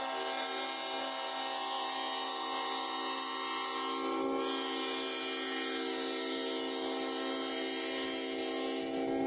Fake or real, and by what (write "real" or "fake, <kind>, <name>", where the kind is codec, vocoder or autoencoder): real